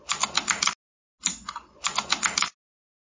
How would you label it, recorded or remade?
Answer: recorded